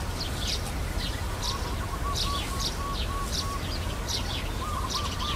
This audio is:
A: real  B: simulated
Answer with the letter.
A